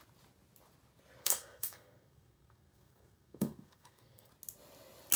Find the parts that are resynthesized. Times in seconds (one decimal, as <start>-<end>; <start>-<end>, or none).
1.2-4.3